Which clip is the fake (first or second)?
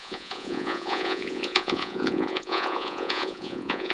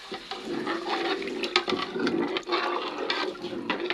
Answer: first